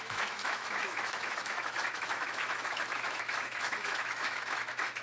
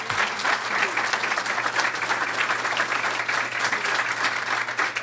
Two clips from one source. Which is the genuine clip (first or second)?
second